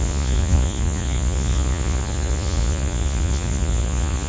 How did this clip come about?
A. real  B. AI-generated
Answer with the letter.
B